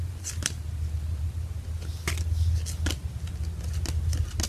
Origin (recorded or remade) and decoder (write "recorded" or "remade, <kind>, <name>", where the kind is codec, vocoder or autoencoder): recorded